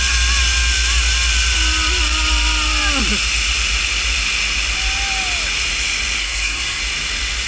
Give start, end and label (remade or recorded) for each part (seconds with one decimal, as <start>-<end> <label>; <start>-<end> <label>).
0.0-6.2 recorded; 6.2-6.8 remade; 6.8-7.5 recorded